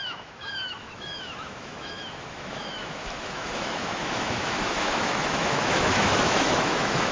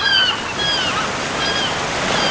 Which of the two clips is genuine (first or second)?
second